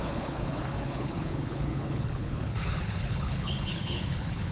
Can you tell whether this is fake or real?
fake